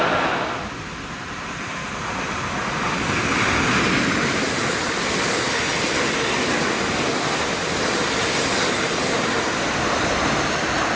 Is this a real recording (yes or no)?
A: yes